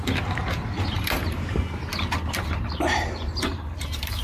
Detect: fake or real fake